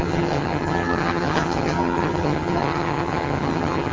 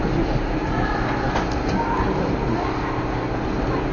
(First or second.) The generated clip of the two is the first